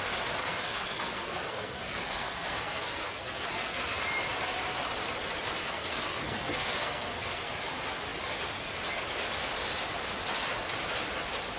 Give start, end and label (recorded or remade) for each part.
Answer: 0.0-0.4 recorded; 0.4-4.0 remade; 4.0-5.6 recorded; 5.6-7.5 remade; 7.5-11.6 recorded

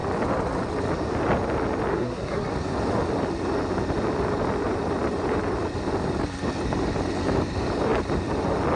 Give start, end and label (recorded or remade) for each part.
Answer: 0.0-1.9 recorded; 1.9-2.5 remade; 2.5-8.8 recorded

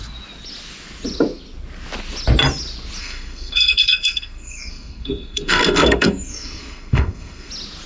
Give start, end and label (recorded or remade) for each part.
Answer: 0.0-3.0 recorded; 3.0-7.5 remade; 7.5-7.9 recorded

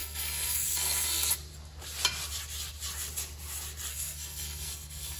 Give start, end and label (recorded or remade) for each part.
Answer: 0.0-1.3 remade; 1.3-3.9 recorded; 3.9-5.2 remade